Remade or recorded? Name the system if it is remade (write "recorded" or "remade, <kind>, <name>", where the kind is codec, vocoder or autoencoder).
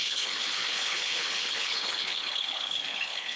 remade, codec, HILCodec